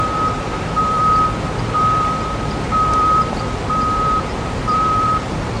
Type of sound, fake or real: fake